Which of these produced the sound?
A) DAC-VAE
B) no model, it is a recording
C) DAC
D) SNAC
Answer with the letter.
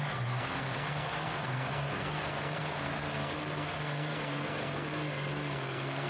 D